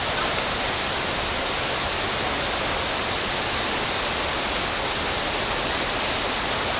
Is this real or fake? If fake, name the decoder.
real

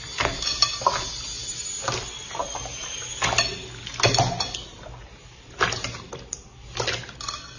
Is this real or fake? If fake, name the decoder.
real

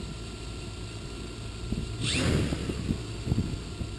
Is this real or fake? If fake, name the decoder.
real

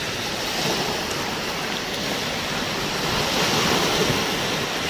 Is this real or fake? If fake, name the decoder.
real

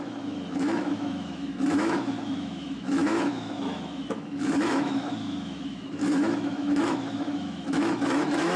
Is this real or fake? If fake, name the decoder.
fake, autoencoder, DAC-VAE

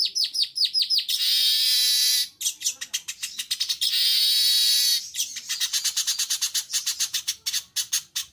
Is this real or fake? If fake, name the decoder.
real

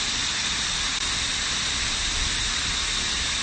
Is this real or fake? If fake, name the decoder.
real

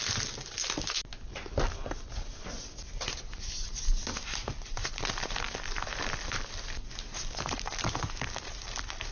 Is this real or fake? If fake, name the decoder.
fake, vocoder, BigVGAN v2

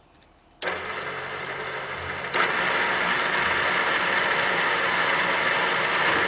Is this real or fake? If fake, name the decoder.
real